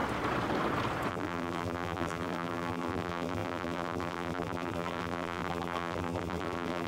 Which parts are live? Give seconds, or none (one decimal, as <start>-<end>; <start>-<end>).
0.0-1.1